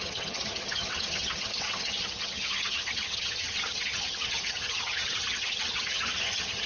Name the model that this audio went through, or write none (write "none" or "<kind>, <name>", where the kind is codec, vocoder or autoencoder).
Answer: vocoder, HiFi-GAN